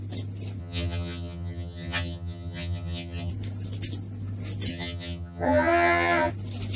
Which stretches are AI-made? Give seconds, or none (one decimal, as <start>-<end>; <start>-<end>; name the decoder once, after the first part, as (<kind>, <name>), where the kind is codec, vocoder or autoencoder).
0.6-3.3 (vocoder, HiFi-GAN); 4.7-6.3